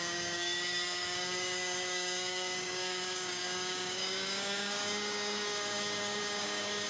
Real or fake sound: fake